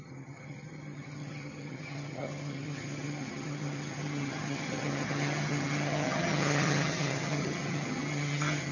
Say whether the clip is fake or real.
fake